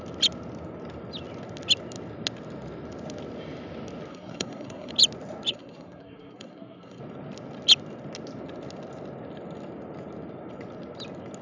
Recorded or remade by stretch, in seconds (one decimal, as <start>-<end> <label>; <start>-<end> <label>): 0.0-4.1 recorded; 4.1-4.9 remade; 4.9-5.5 recorded; 5.5-7.0 remade; 7.0-11.4 recorded